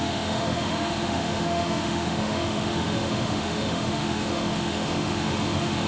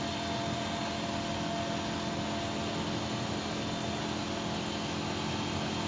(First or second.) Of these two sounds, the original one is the second